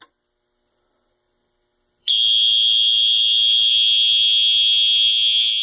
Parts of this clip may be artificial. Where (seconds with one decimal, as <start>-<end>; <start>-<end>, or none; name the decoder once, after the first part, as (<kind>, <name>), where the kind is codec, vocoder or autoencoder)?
2.0-3.7 (autoencoder, DAC-VAE)